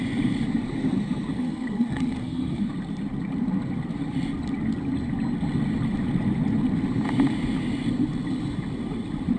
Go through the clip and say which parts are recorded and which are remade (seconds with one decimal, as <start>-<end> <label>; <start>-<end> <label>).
0.0-1.3 recorded; 1.3-2.7 remade; 2.7-9.4 recorded